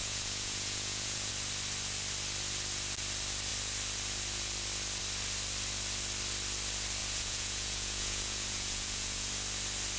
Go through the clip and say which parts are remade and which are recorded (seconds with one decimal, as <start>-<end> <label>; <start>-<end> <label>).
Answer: 0.0-1.3 remade; 1.3-7.0 recorded; 7.0-9.3 remade; 9.3-10.0 recorded